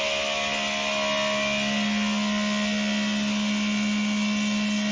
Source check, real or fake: real